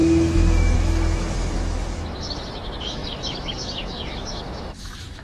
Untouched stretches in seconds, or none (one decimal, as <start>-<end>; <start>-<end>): none